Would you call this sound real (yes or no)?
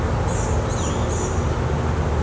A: yes